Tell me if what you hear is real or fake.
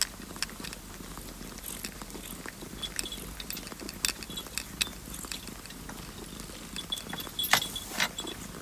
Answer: real